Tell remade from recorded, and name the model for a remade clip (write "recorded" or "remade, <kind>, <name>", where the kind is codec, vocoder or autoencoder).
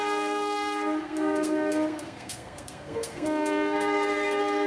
remade, codec, SNAC